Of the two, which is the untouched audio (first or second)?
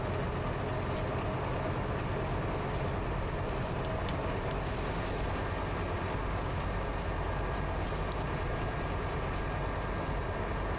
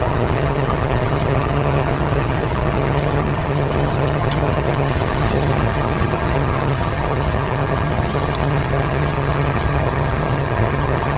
first